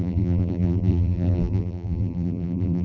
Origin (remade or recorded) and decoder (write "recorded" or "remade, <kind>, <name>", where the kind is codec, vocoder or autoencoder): remade, vocoder, BigVGAN v2